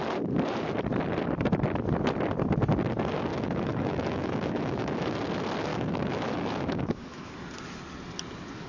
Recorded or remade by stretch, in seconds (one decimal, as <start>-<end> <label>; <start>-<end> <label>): 0.0-3.3 recorded; 3.3-5.2 remade; 5.2-5.7 recorded; 5.7-7.3 remade; 7.3-8.7 recorded